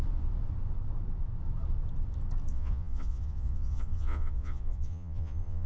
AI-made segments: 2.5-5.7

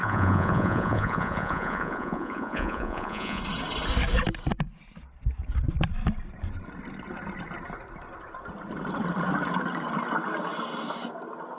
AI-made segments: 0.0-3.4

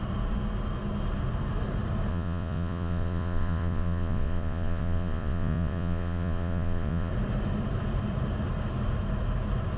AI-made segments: 2.1-7.1